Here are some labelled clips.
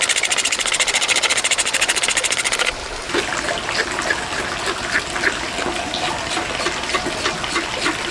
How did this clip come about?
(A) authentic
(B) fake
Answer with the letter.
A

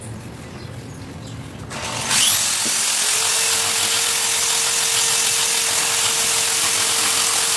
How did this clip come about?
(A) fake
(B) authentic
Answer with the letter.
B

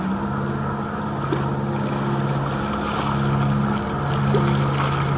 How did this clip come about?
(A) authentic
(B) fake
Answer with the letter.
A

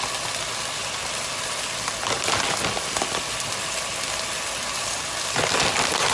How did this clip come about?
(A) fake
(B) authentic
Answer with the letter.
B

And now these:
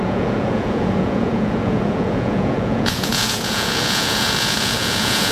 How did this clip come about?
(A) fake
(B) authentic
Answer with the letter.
A